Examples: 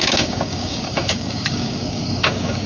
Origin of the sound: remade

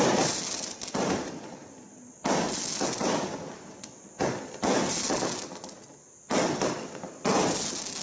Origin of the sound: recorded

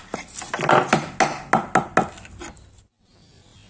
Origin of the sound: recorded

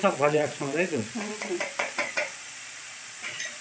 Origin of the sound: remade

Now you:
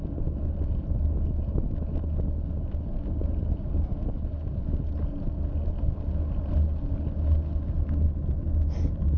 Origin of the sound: recorded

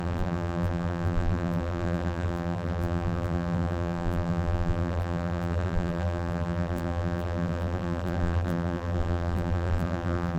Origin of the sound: remade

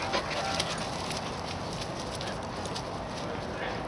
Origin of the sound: recorded